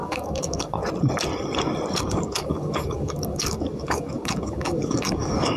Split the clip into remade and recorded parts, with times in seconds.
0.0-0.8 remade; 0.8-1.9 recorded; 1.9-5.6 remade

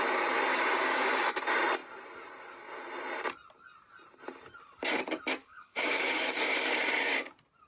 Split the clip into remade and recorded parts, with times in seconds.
0.0-0.5 recorded; 0.5-1.4 remade; 1.4-5.4 recorded; 5.4-7.3 remade; 7.3-7.7 recorded

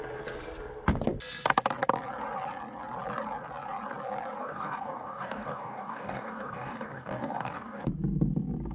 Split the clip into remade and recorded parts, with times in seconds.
0.0-4.4 recorded; 4.4-7.8 remade; 7.8-8.7 recorded

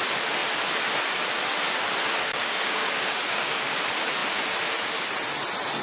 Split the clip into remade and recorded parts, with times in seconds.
0.0-2.3 recorded; 2.3-3.8 remade; 3.8-5.8 recorded

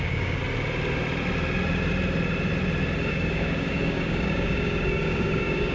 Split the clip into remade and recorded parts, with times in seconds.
0.0-0.4 remade; 0.4-3.1 recorded; 3.1-5.7 remade

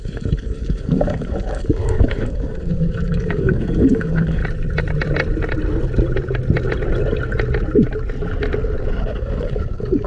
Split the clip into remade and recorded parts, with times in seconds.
0.0-4.4 remade; 4.4-8.9 recorded; 8.9-10.1 remade

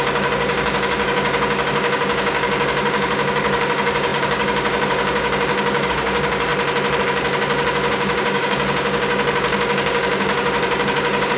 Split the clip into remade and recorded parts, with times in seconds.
0.0-6.5 remade; 6.5-7.0 recorded; 7.0-11.4 remade

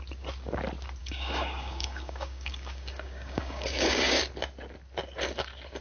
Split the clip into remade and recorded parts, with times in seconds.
0.0-1.0 recorded; 1.0-4.2 remade; 4.2-5.8 recorded